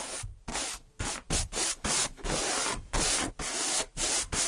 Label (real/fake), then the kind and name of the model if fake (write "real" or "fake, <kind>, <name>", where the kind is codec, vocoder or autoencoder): real